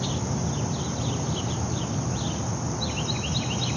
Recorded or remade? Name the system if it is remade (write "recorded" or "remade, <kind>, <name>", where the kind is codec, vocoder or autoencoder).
recorded